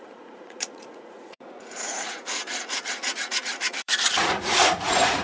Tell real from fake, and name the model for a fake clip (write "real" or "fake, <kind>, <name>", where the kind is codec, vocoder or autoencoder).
fake, vocoder, Vocos